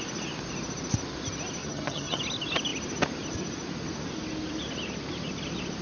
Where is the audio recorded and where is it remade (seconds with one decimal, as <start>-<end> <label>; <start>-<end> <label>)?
0.0-1.6 recorded; 1.6-2.2 remade; 2.2-5.8 recorded